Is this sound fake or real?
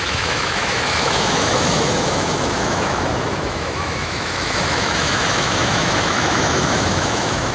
fake